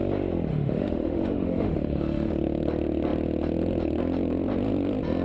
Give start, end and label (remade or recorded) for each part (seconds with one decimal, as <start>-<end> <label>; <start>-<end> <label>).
0.0-0.5 recorded; 0.5-2.3 remade; 2.3-5.2 recorded